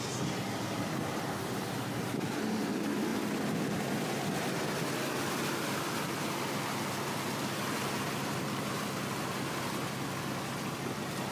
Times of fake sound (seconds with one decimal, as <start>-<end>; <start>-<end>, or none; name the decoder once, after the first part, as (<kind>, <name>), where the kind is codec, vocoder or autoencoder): none